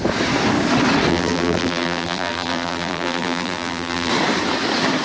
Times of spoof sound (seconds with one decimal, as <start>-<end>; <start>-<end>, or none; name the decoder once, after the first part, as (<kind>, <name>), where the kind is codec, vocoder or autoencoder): 1.1-4.1 (vocoder, BigVGAN v2)